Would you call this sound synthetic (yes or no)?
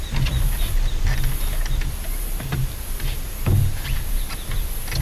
no